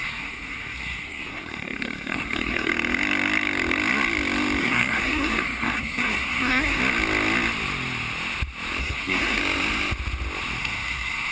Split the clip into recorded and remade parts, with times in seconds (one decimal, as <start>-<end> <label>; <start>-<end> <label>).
0.0-2.7 remade; 2.7-4.6 recorded; 4.6-6.8 remade; 6.8-8.8 recorded; 8.8-9.4 remade; 9.4-10.6 recorded; 10.6-11.3 remade

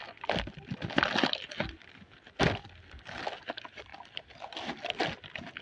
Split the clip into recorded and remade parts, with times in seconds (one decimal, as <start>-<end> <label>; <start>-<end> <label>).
0.0-5.6 recorded